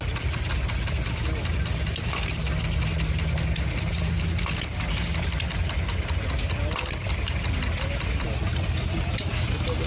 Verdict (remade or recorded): recorded